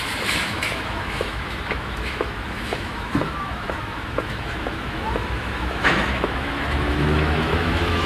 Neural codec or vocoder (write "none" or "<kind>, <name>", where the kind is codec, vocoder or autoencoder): autoencoder, DAC-VAE